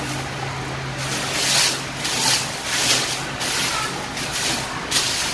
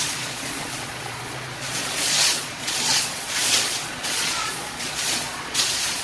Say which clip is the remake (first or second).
second